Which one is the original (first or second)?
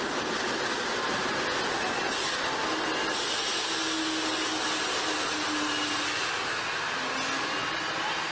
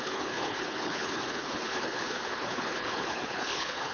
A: first